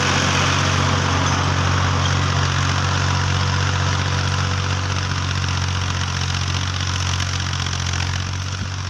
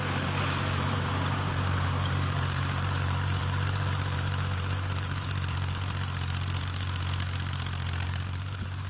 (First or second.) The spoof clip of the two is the second